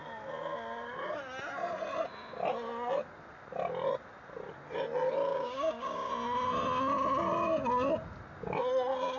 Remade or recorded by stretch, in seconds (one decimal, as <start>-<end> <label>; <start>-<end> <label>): 0.0-5.3 recorded; 5.3-6.1 remade; 6.1-9.2 recorded